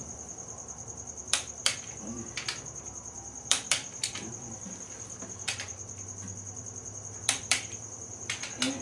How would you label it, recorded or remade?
remade